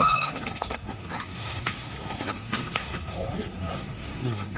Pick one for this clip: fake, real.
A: fake